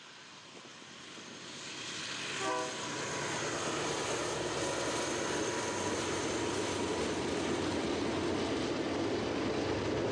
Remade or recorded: recorded